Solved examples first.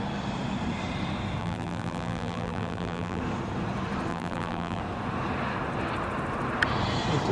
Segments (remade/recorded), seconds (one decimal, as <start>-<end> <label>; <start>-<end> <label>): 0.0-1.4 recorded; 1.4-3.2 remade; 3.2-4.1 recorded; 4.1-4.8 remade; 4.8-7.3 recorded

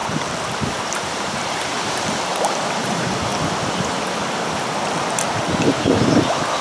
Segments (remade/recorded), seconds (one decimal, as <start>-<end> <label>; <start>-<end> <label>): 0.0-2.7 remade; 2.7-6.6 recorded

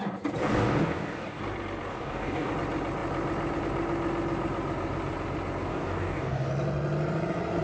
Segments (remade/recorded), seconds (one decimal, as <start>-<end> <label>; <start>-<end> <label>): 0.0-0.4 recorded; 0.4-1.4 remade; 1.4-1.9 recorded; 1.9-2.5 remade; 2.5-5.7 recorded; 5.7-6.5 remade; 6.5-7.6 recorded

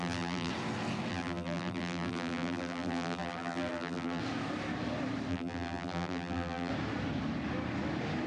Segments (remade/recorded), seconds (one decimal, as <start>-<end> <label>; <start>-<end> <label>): 0.0-0.5 remade; 0.5-1.1 recorded; 1.1-4.2 remade; 4.2-5.3 recorded; 5.3-6.7 remade; 6.7-8.3 recorded

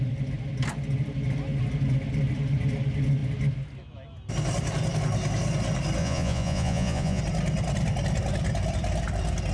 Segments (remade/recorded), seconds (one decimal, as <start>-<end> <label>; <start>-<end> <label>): 0.0-6.0 recorded; 6.0-7.2 remade; 7.2-9.5 recorded

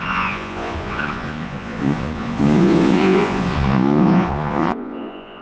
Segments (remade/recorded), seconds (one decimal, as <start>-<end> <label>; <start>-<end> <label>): 0.0-5.4 remade

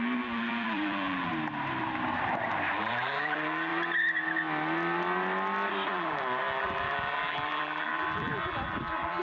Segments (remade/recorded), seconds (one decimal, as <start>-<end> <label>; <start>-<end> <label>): 0.0-1.3 remade; 1.3-2.7 recorded; 2.7-3.7 remade; 3.7-5.9 recorded; 5.9-9.2 remade